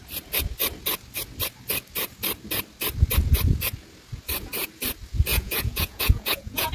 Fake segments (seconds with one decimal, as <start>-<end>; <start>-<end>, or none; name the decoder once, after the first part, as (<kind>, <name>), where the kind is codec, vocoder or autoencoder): 5.3-6.7 (vocoder, Vocos)